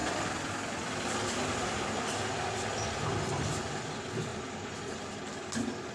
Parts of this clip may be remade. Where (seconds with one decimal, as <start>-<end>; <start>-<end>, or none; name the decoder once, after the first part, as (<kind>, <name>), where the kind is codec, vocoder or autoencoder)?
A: none